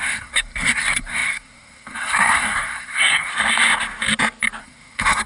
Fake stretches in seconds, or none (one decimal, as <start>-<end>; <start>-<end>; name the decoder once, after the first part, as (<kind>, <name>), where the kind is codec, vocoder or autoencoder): 0.0-3.3 (codec, SNAC); 4.6-5.3